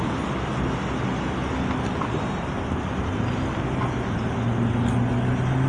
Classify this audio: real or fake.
real